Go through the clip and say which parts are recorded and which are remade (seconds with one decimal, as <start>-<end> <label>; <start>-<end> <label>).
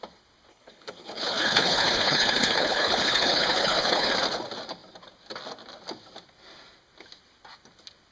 0.0-0.5 recorded; 0.5-4.1 remade; 4.1-8.1 recorded